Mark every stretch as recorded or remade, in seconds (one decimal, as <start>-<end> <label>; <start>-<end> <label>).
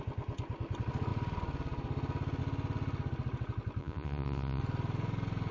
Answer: 0.0-3.8 recorded; 3.8-4.6 remade; 4.6-5.5 recorded